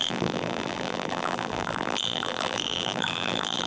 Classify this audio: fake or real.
fake